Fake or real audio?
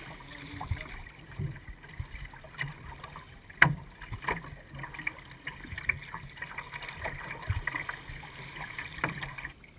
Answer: real